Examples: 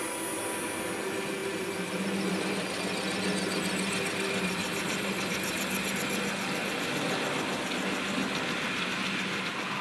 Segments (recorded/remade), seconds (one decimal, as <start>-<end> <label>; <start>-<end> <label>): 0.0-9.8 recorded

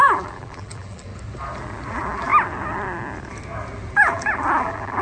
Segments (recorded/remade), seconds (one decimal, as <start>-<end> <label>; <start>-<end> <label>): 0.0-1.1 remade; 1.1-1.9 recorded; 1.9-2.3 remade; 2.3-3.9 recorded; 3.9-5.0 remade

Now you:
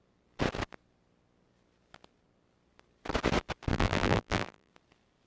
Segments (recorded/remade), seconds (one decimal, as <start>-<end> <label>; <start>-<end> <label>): 0.0-3.7 recorded; 3.7-4.7 remade; 4.7-5.3 recorded

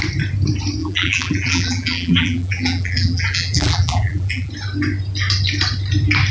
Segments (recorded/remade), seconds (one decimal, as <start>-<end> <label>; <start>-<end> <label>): 0.0-0.8 recorded; 0.8-4.5 remade; 4.5-6.3 recorded

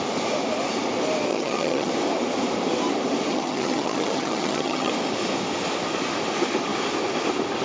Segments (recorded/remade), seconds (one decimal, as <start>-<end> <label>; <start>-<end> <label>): 0.0-1.3 recorded; 1.3-1.9 remade; 1.9-3.3 recorded; 3.3-4.9 remade; 4.9-7.6 recorded

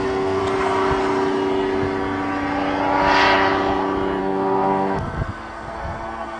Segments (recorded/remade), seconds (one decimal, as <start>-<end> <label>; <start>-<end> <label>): 0.0-0.4 remade; 0.4-4.2 recorded; 4.2-6.4 remade